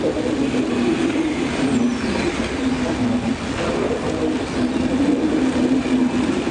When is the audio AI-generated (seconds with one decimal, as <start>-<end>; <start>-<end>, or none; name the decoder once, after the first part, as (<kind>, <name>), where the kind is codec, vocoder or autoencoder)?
none